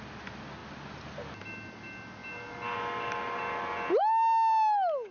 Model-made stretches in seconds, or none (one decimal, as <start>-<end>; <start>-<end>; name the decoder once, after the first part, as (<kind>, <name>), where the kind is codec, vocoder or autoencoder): none